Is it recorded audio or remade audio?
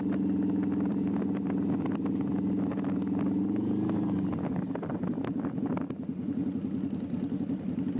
recorded